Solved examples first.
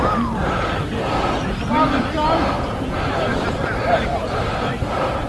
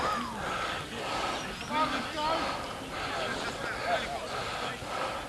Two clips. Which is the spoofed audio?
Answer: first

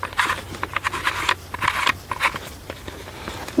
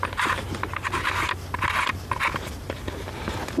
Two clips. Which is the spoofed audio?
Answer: first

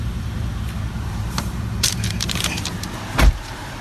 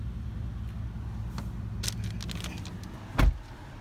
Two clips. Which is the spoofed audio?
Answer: first